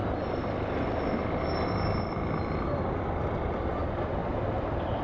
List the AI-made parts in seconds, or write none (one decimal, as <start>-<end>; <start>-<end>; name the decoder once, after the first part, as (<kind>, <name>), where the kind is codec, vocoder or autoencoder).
none

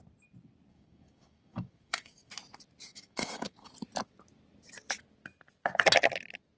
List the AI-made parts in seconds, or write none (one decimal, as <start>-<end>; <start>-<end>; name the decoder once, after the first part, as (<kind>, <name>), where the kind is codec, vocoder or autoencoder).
0.7-2.3 (codec, DAC); 2.9-3.7

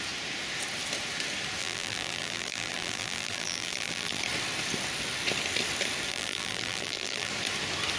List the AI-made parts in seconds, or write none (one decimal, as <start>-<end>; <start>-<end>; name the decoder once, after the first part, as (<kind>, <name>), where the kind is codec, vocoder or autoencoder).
1.6-4.2 (vocoder, BigVGAN v2); 6.1-7.3

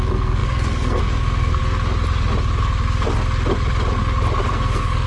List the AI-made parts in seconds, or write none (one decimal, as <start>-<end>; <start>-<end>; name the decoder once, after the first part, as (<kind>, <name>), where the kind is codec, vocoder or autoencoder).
0.0-1.6 (codec, SNAC); 4.5-5.1